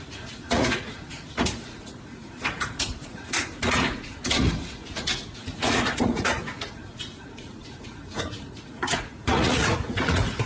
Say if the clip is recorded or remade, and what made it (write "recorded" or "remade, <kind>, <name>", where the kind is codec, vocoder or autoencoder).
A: remade, vocoder, Vocos